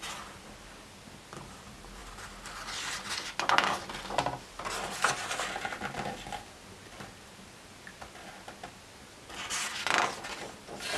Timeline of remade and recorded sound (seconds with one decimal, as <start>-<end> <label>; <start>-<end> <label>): 0.0-11.0 recorded